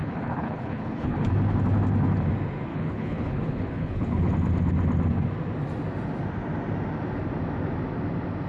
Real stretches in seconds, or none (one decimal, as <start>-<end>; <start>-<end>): 1.3-2.7; 4.3-8.5